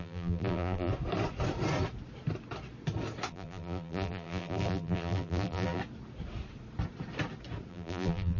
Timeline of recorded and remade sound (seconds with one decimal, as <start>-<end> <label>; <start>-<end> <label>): 0.0-0.9 remade; 0.9-3.3 recorded; 3.3-5.8 remade; 5.8-7.7 recorded; 7.7-8.4 remade